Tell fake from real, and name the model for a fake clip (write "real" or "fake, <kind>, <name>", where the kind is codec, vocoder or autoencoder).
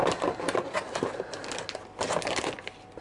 real